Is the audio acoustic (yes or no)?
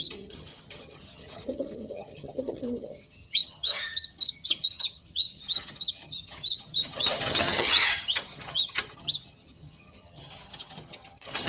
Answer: no